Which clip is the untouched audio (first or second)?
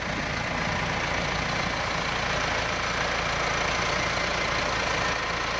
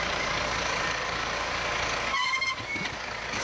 first